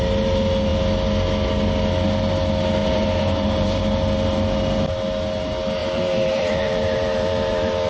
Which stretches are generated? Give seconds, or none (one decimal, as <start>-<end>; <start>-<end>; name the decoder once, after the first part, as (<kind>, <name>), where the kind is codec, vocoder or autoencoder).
2.8-3.8 (vocoder, BigVGAN v2); 5.8-7.9